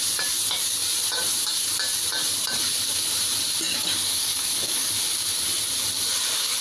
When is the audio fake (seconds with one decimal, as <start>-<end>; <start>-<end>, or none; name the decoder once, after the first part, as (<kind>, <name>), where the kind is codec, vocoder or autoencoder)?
3.7-4.9 (codec, DAC)

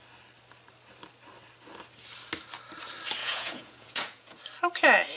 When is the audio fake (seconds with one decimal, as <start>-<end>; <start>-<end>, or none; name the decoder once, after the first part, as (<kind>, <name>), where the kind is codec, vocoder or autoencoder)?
3.2-4.4 (vocoder, Vocos)

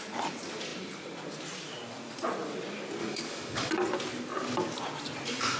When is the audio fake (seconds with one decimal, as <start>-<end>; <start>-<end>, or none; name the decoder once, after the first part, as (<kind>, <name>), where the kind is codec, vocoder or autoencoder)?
3.0-3.7 (codec, DAC)